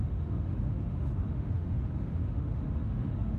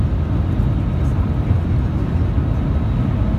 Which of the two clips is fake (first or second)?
first